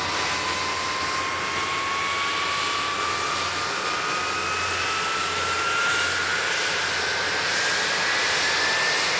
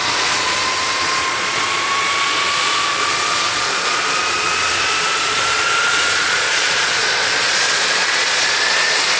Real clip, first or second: first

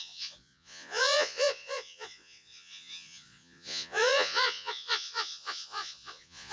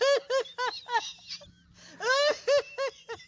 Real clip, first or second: second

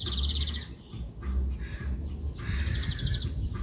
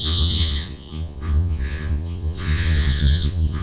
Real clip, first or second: first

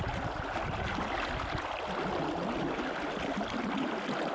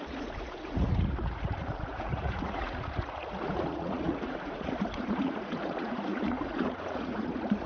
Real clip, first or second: first